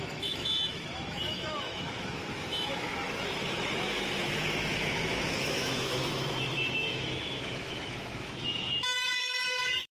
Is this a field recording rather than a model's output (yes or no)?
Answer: no